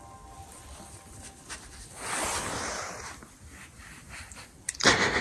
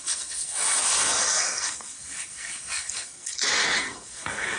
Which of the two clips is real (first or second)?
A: first